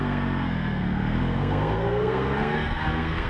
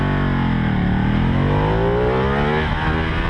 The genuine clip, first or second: second